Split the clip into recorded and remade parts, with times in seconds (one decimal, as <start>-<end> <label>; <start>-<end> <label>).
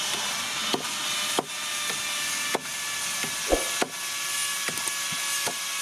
0.0-5.8 recorded